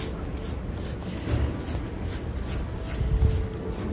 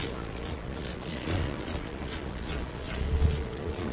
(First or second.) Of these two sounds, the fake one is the second